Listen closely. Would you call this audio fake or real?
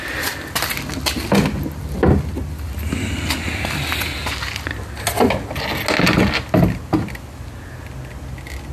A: real